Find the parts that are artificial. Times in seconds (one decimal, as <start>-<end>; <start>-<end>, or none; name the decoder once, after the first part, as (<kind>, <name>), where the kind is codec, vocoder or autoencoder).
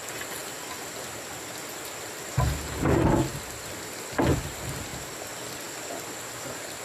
none